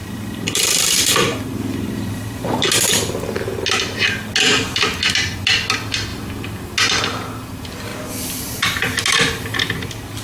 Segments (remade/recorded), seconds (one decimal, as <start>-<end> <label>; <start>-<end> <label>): 0.0-2.7 remade; 2.7-6.1 recorded; 6.1-6.6 remade; 6.6-10.2 recorded